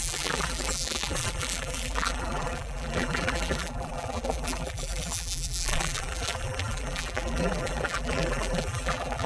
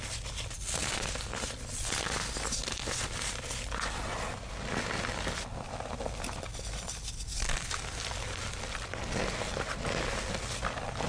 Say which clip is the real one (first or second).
second